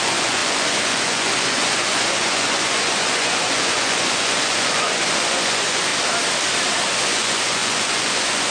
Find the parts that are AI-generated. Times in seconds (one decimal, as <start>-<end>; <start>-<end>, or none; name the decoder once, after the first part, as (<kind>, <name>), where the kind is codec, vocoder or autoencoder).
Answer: 0.0-5.9 (vocoder, Vocos); 7.0-8.5